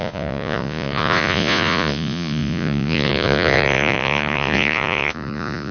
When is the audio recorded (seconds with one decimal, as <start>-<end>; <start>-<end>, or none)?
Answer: none